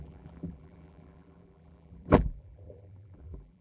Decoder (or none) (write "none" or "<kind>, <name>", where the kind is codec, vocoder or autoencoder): vocoder, BigVGAN v2